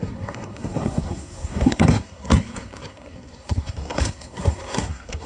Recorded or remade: remade